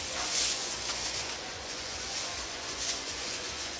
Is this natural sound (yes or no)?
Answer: no